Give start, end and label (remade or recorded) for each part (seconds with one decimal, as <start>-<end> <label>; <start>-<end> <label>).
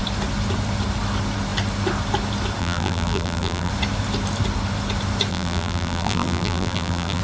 0.0-2.6 recorded; 2.6-3.7 remade; 3.7-5.3 recorded; 5.3-7.2 remade